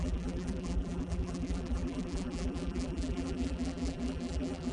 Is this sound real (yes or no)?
no